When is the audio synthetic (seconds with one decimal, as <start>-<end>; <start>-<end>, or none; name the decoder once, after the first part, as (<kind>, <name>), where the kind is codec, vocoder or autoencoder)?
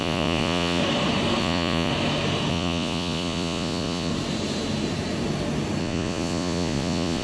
0.0-0.8 (vocoder, Vocos); 1.4-1.9; 2.5-4.1; 5.8-7.2